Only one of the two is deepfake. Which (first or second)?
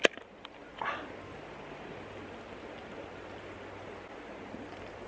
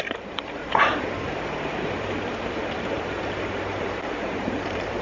second